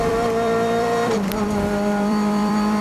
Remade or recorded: remade